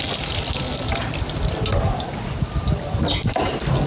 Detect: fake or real real